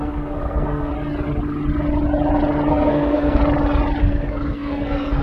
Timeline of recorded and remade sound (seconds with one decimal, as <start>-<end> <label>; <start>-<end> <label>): 0.0-0.9 remade; 0.9-2.7 recorded; 2.7-3.4 remade; 3.4-4.0 recorded; 4.0-5.2 remade